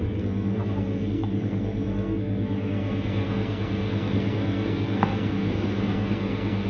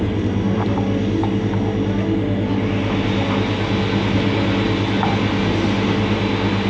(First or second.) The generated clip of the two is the first